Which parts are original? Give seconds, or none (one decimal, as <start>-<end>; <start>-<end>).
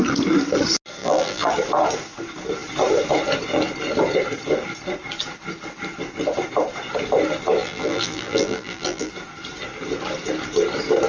0.0-1.0; 1.5-7.6; 9.1-11.1